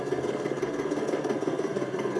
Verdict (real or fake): fake